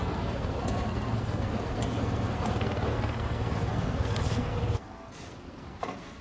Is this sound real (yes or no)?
no